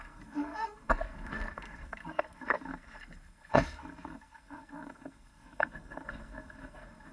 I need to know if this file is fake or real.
fake